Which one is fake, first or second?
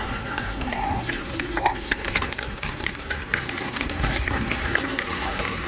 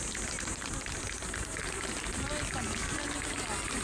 first